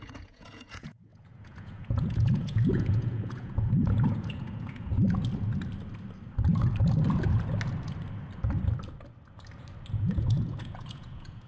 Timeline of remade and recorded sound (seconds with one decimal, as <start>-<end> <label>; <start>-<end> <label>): 0.0-4.9 remade; 4.9-9.9 recorded; 9.9-11.5 remade